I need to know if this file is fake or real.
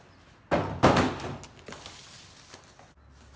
real